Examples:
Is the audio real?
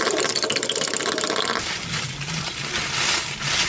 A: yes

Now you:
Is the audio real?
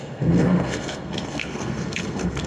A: no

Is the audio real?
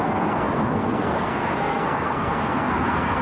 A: no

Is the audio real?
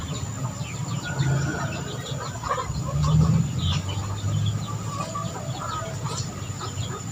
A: yes